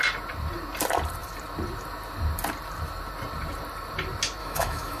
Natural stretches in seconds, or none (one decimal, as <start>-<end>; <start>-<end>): 0.0-4.4